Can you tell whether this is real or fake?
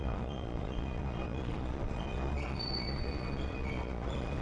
fake